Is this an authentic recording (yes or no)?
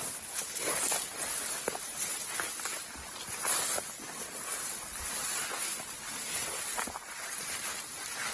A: yes